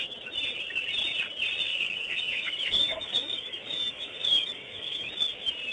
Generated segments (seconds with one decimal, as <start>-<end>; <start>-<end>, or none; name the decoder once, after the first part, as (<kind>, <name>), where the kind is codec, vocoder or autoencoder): 1.7-5.1 (codec, DAC)